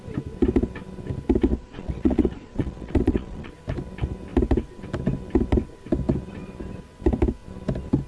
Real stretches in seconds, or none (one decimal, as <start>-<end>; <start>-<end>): 0.0-1.5; 3.5-8.1